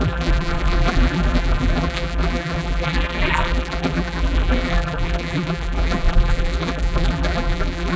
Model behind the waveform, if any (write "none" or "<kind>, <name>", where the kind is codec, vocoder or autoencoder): vocoder, BigVGAN v2